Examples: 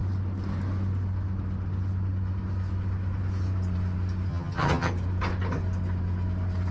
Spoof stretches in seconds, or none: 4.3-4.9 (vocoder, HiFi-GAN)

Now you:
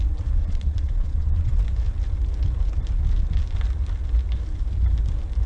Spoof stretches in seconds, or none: 0.4-1.6 (vocoder, Vocos)